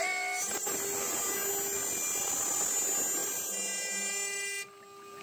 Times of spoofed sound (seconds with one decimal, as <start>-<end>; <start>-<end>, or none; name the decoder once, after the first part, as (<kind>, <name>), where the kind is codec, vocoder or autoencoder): 3.2-4.1 (vocoder, BigVGAN v2)